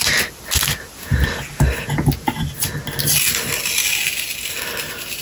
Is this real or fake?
real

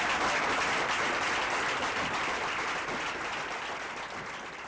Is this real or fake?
real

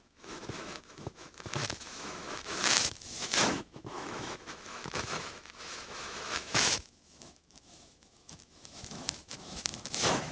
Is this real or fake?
fake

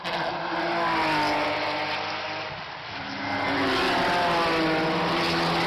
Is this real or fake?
real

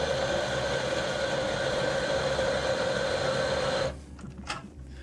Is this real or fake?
real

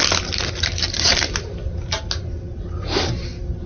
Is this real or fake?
real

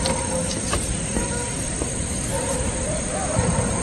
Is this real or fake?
real